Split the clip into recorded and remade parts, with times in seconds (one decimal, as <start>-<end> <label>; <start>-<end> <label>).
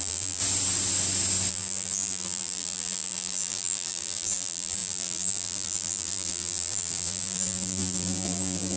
0.0-0.4 remade; 0.4-1.5 recorded; 1.5-8.8 remade